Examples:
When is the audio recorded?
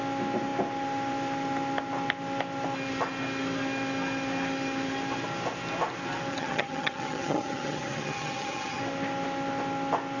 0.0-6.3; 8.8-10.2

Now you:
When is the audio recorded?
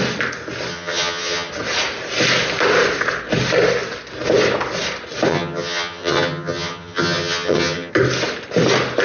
0.0-0.7; 1.5-5.3; 7.9-9.0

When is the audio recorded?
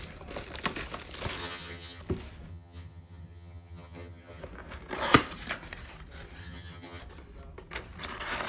0.0-1.4; 2.0-2.5; 4.4-6.4; 7.0-8.5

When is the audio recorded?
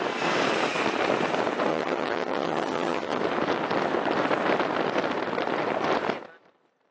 0.0-1.7; 3.2-6.9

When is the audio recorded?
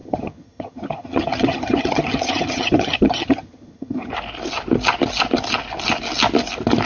4.1-6.9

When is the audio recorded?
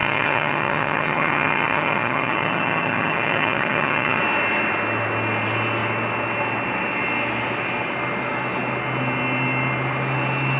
4.2-10.6